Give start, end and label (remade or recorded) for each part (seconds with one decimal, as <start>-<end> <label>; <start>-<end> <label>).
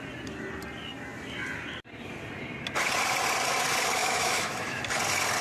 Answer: 0.0-4.0 recorded; 4.0-4.8 remade; 4.8-5.4 recorded